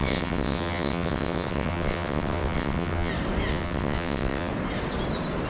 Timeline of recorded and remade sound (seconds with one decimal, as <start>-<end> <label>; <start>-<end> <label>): 0.0-3.1 remade; 3.1-3.5 recorded; 3.5-4.5 remade; 4.5-5.5 recorded

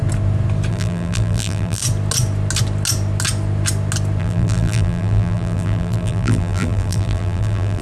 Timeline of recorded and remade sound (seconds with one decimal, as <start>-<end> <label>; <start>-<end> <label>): 0.0-0.7 recorded; 0.7-1.8 remade; 1.8-4.2 recorded; 4.2-7.8 remade